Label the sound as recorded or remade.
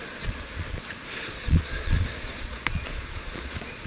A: remade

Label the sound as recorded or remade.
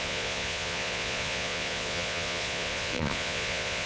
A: remade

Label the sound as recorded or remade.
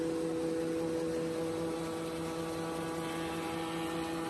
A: recorded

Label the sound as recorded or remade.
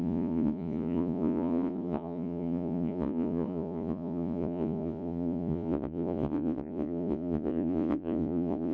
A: remade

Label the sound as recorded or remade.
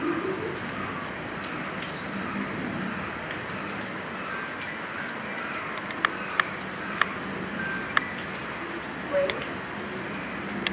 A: recorded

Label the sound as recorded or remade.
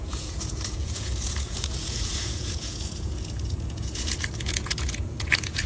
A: remade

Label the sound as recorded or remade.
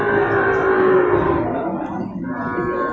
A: recorded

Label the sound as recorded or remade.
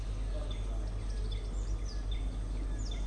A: recorded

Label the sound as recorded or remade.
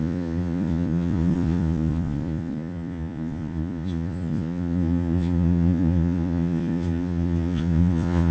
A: remade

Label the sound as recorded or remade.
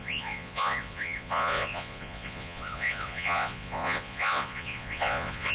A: remade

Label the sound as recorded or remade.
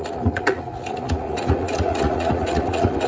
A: remade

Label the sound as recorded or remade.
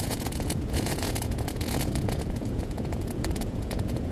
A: remade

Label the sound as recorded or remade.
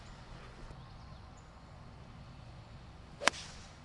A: remade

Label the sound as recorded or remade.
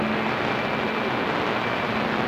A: recorded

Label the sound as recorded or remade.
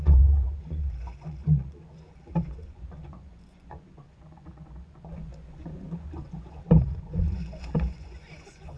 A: remade